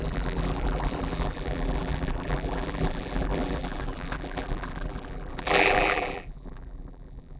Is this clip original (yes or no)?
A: no